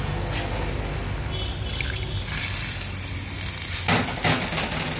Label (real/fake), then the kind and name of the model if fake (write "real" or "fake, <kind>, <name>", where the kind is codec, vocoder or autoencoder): real